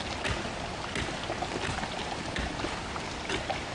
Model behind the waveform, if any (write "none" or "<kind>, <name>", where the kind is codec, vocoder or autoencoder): none